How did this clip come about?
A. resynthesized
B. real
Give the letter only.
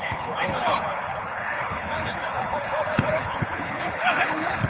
A